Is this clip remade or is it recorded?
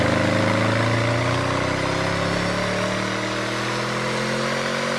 recorded